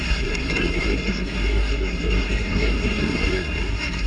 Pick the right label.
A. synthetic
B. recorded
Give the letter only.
A